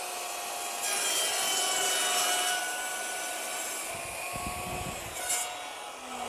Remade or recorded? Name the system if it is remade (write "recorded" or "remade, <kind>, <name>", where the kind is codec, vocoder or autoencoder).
recorded